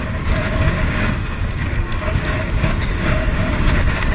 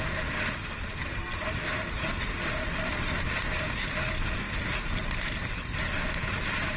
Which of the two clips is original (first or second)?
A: second